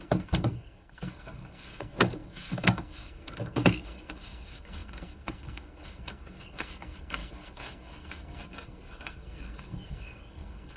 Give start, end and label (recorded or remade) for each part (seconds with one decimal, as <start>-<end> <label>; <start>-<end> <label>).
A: 0.0-10.8 remade